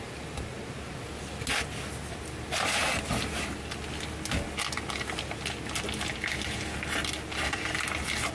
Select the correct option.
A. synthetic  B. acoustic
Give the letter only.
B